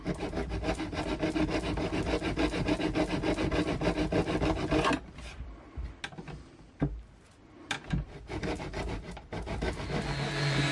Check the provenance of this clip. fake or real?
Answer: real